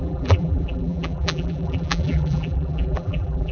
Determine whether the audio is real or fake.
fake